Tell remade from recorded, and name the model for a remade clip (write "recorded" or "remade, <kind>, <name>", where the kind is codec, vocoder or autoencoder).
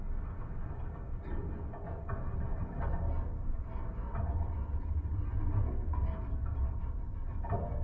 recorded